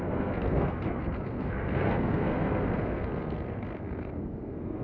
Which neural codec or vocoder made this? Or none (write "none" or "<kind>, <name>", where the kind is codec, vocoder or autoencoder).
codec, SNAC